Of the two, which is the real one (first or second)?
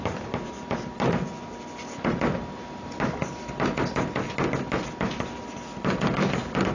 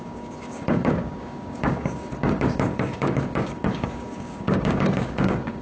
first